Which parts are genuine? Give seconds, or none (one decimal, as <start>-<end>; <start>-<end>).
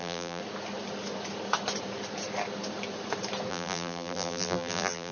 0.4-3.5